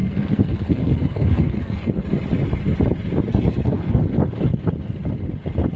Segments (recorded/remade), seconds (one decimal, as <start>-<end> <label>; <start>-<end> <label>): 0.0-2.0 remade; 2.0-3.3 recorded; 3.3-4.0 remade; 4.0-5.8 recorded